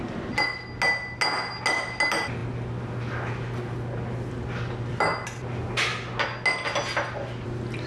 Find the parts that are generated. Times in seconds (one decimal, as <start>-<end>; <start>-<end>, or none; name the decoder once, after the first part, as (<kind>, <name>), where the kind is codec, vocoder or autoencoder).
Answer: none